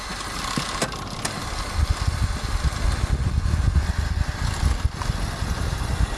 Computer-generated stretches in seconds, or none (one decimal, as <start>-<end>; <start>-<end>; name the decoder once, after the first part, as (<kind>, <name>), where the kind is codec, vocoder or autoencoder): none